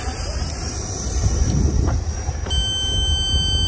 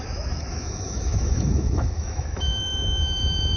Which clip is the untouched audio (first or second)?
first